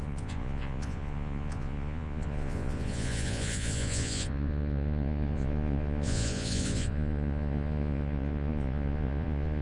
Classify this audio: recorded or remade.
remade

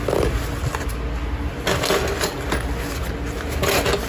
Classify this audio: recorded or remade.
recorded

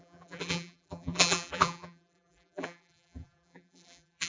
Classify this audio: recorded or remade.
remade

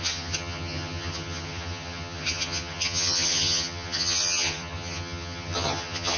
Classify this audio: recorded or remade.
remade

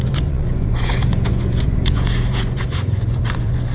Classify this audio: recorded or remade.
remade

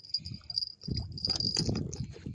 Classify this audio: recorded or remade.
recorded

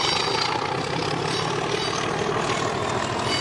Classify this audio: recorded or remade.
recorded